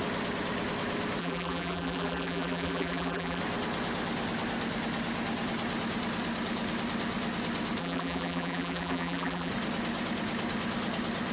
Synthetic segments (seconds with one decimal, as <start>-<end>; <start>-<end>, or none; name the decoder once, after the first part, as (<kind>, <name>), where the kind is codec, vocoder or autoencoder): 1.2-3.4 (vocoder, BigVGAN v2); 7.8-9.5